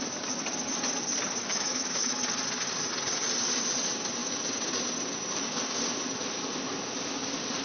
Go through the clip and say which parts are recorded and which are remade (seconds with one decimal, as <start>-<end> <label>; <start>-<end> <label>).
0.0-1.4 recorded; 1.4-2.2 remade; 2.2-7.6 recorded